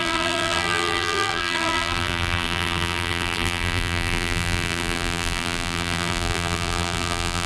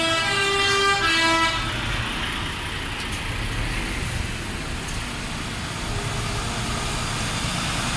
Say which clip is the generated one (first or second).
first